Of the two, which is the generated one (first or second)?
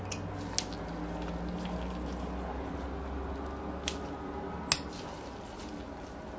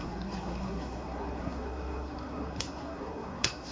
second